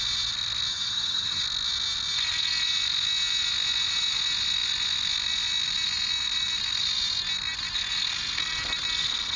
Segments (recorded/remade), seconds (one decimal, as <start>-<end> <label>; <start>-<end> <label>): 0.0-0.7 recorded; 0.7-1.4 remade; 1.4-9.4 recorded